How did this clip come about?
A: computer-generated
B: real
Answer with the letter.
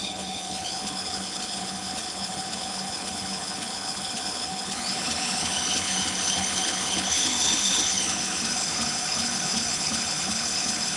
A